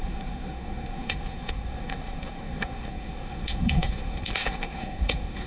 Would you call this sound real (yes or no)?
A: no